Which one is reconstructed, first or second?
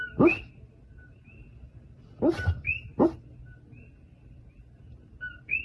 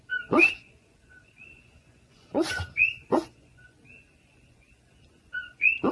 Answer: second